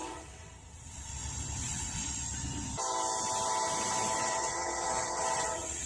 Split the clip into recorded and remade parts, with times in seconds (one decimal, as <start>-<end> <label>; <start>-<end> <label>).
0.0-1.1 remade; 1.1-1.6 recorded; 1.6-2.0 remade; 2.0-4.2 recorded; 4.2-5.9 remade